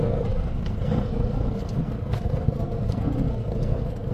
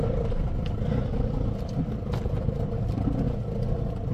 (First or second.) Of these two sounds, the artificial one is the first